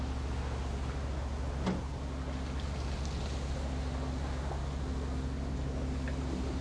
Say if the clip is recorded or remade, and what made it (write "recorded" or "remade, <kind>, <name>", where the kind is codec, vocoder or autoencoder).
recorded